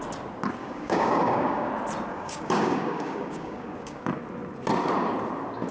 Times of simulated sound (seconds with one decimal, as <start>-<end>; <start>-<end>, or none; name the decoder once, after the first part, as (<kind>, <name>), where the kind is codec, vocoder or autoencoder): 0.6-1.7 (codec, DAC); 2.1-4.0

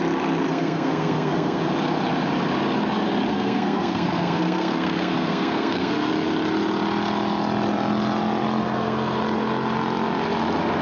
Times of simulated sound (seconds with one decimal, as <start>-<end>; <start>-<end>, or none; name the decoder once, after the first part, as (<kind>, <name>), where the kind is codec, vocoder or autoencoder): 0.5-1.6 (codec, SNAC); 3.3-6.1; 8.6-9.2

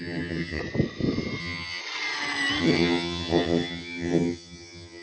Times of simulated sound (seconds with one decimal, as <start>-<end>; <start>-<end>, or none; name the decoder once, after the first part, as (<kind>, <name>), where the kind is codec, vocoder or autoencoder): 0.0-0.6 (vocoder, HiFi-GAN); 1.4-1.8; 2.6-5.0

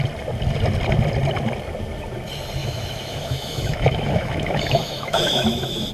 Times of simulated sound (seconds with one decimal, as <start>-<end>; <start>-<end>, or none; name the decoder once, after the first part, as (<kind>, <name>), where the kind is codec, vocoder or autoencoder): 2.6-5.9 (autoencoder, DAC-VAE)

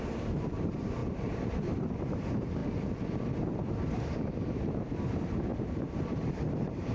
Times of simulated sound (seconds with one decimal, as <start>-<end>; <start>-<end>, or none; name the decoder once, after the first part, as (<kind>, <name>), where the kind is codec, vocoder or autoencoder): 0.0-2.6 (vocoder, BigVGAN v2); 3.9-5.5; 6.0-6.9

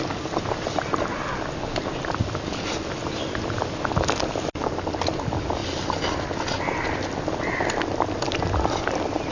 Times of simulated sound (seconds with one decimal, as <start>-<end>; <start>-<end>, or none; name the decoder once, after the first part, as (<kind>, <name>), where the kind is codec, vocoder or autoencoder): none

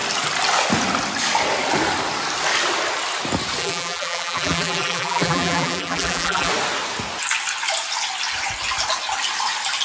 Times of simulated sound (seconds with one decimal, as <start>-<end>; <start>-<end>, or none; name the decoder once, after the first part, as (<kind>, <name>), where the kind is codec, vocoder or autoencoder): 3.6-6.5 (vocoder, BigVGAN v2)

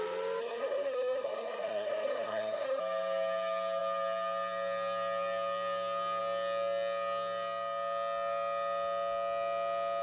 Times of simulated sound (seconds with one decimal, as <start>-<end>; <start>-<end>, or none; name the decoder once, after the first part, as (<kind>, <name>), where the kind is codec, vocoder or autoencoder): 0.4-2.8 (codec, SNAC)